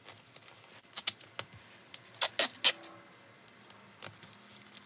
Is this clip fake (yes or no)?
no